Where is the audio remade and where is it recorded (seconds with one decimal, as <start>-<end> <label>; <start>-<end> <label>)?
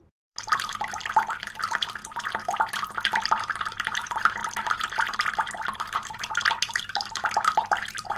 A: 0.0-2.0 remade; 2.0-3.1 recorded; 3.1-8.2 remade